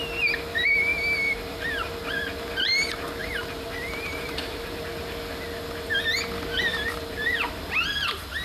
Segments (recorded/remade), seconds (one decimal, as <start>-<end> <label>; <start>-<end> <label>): 0.0-0.9 recorded; 0.9-1.9 remade; 1.9-3.2 recorded; 3.2-4.8 remade; 4.8-6.7 recorded; 6.7-7.5 remade; 7.5-8.4 recorded